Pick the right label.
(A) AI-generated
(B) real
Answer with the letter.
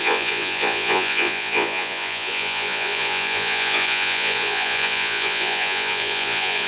A